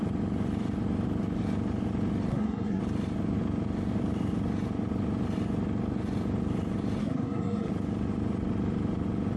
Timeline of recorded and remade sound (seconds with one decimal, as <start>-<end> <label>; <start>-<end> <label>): 0.0-2.3 recorded; 2.3-2.8 remade; 2.8-7.0 recorded; 7.0-7.7 remade; 7.7-9.4 recorded